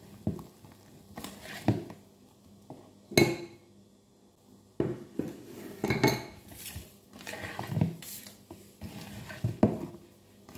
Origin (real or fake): real